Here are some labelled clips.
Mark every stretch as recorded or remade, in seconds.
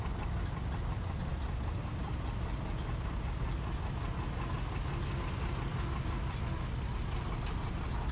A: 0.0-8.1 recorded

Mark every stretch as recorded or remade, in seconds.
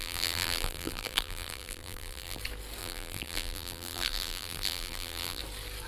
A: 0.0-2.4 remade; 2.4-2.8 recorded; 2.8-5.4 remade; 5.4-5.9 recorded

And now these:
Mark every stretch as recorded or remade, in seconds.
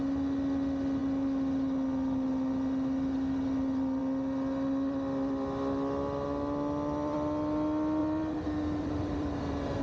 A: 0.0-8.0 recorded; 8.0-9.8 remade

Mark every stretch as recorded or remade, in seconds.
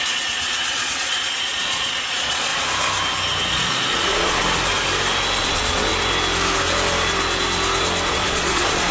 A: 0.0-2.5 remade; 2.5-3.5 recorded; 3.5-4.4 remade; 4.4-5.4 recorded; 5.4-5.9 remade; 5.9-8.1 recorded; 8.1-8.9 remade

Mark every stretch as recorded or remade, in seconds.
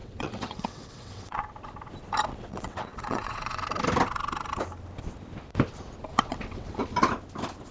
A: 0.0-1.4 remade; 1.4-2.3 recorded; 2.3-3.6 remade; 3.6-6.1 recorded; 6.1-6.8 remade; 6.8-7.7 recorded